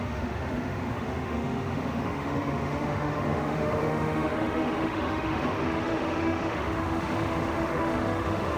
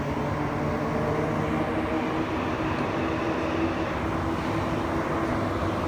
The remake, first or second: first